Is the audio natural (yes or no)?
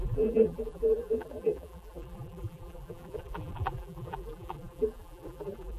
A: no